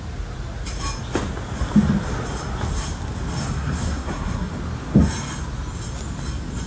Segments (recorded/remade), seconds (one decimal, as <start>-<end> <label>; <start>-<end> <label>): 0.0-3.4 recorded; 3.4-4.5 remade; 4.5-6.7 recorded